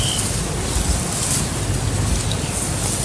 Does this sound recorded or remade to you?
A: recorded